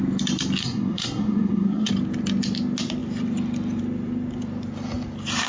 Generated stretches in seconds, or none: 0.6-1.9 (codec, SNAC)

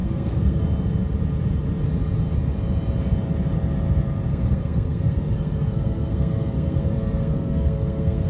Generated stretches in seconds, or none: 0.0-0.6 (codec, SNAC); 4.3-8.3